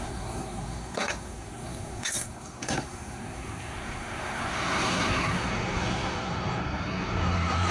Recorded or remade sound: remade